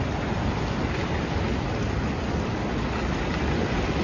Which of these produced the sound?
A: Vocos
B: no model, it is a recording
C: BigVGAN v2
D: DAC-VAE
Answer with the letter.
B